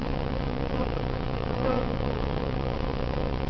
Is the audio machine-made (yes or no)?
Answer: yes